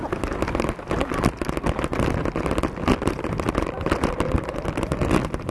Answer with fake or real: real